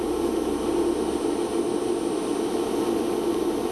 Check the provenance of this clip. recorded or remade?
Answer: recorded